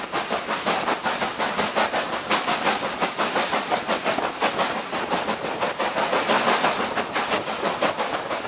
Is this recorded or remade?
recorded